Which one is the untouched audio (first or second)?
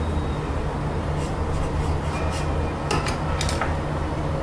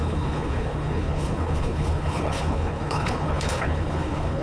first